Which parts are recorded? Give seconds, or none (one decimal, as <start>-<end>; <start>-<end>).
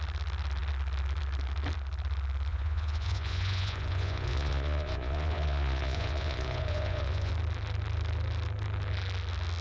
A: 0.0-2.5; 7.3-9.6